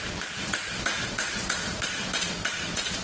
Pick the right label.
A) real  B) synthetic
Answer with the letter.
B